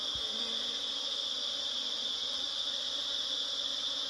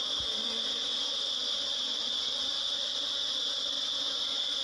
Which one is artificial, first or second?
second